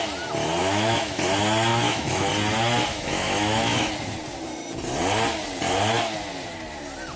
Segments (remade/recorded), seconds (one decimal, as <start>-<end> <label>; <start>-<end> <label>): 0.0-0.6 recorded; 0.6-1.2 remade; 1.2-1.7 recorded; 1.7-2.3 remade; 2.3-2.9 recorded; 2.9-3.9 remade; 3.9-7.2 recorded